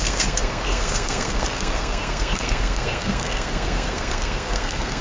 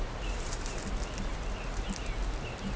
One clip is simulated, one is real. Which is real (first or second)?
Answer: second